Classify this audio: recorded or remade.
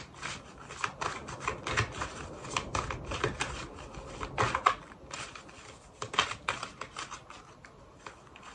recorded